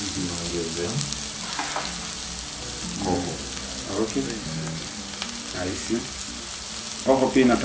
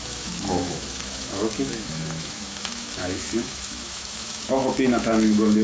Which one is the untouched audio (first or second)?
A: first